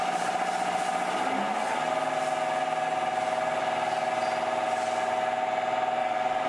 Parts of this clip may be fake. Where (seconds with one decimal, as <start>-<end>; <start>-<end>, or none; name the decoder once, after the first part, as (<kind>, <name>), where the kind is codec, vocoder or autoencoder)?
6.0-6.5 (codec, DAC)